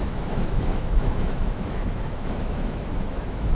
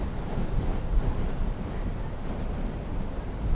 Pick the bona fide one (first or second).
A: second